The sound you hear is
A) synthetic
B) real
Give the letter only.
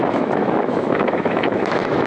A